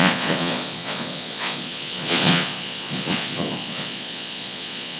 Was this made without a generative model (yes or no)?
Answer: no